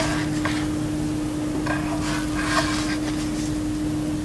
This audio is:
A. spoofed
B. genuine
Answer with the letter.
B